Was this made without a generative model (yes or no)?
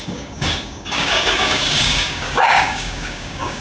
no